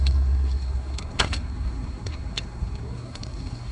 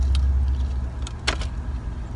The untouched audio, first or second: second